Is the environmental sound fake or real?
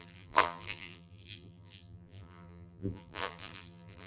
fake